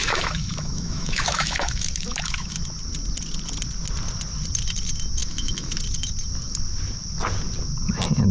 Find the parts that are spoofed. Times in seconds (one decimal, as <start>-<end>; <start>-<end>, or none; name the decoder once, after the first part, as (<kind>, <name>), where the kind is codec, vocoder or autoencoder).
0.0-2.6 (autoencoder, DAC-VAE); 5.2-5.8

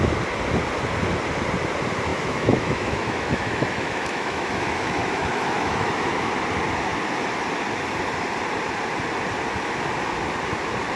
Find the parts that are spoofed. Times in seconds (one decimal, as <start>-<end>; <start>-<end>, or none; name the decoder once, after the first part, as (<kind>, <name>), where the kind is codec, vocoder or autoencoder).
2.1-6.3 (autoencoder, DAC-VAE)